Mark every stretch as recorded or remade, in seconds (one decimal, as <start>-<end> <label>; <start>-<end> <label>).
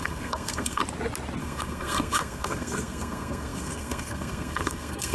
0.0-0.8 remade; 0.8-1.4 recorded; 1.4-5.1 remade